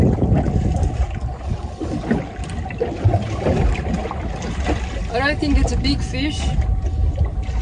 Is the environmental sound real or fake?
real